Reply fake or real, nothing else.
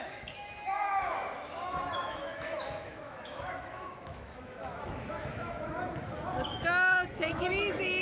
fake